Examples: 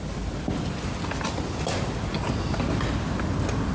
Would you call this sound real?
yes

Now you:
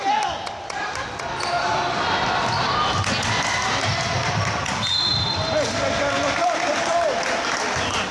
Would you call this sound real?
yes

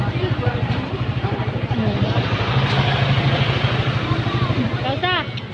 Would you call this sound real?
yes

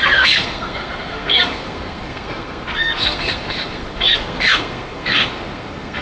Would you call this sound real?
no